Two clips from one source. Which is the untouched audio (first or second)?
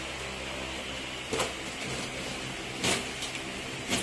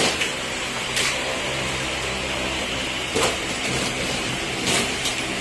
first